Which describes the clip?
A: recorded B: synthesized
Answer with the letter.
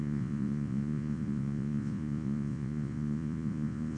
B